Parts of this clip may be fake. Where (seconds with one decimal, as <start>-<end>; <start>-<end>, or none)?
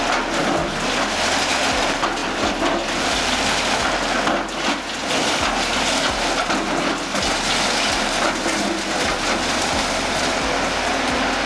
none